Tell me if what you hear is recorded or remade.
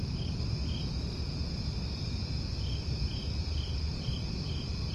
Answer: recorded